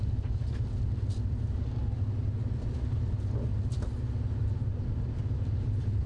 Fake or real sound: real